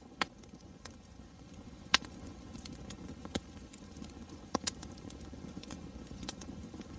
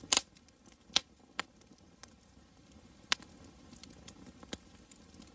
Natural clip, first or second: second